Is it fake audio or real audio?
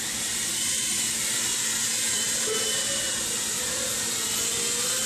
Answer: real